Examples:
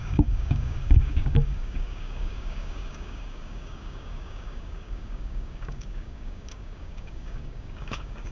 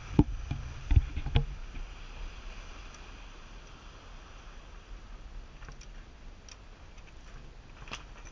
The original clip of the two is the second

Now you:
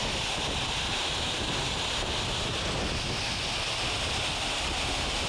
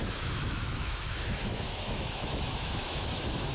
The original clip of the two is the first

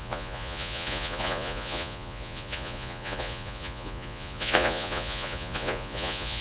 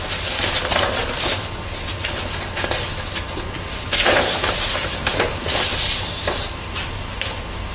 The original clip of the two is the second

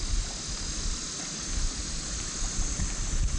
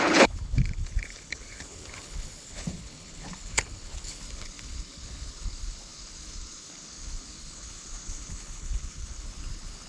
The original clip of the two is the first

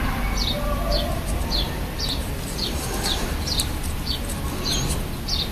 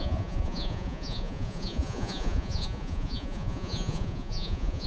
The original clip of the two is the first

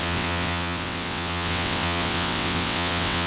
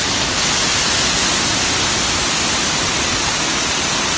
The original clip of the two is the second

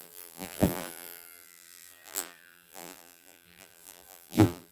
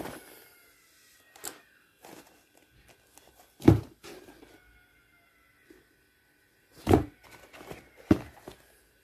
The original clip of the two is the second